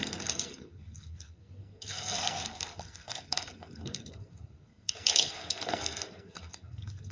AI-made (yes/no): yes